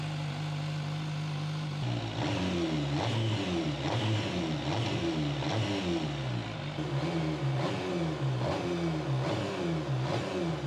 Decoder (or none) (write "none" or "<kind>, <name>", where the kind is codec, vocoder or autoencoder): none